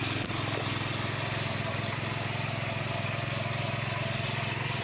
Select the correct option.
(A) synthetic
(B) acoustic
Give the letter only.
B